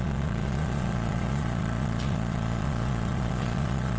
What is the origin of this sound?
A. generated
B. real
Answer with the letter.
A